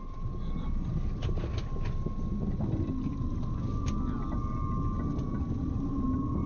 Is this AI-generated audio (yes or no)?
no